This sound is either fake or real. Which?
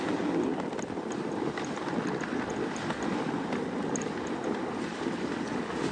real